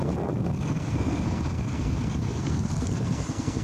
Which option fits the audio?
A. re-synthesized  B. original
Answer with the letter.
A